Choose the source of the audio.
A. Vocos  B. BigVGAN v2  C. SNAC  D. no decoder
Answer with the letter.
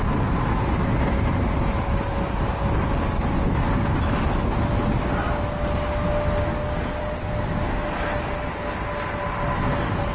D